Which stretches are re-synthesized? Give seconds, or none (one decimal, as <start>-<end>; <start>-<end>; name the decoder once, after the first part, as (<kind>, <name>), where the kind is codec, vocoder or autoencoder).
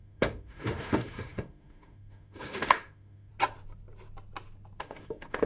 0.0-3.3 (autoencoder, DAC-VAE); 4.8-5.5